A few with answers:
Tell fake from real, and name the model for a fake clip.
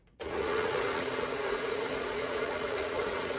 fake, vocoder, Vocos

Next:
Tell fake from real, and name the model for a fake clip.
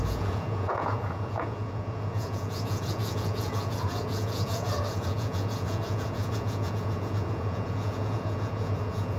fake, vocoder, Vocos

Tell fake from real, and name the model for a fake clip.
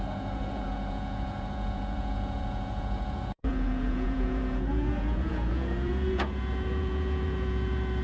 fake, vocoder, Vocos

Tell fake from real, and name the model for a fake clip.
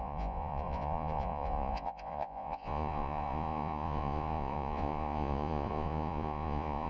fake, vocoder, Vocos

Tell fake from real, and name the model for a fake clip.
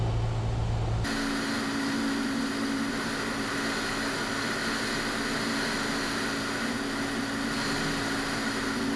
real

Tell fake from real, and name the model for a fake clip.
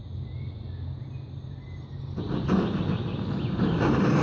real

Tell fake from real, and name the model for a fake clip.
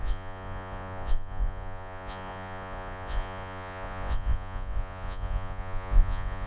fake, vocoder, Vocos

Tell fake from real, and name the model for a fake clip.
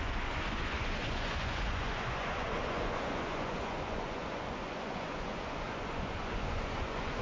fake, vocoder, Vocos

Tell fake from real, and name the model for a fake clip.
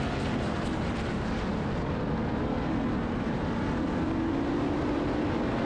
real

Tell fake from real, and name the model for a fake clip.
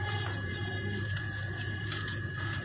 fake, vocoder, Vocos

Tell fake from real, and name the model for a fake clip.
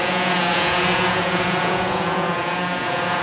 fake, vocoder, Vocos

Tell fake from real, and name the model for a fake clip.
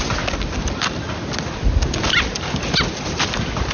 real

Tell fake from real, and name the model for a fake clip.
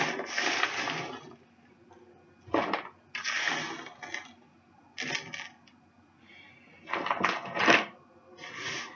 real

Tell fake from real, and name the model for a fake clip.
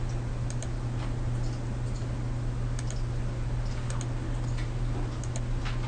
real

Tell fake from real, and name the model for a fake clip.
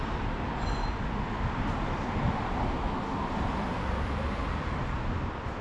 real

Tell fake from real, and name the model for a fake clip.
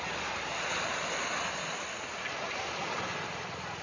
real